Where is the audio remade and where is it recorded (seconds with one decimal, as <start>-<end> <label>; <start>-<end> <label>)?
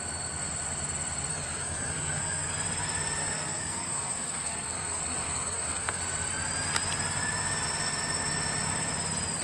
0.0-1.3 recorded; 1.3-2.5 remade; 2.5-3.2 recorded; 3.2-6.0 remade; 6.0-9.4 recorded